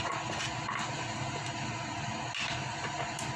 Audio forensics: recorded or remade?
recorded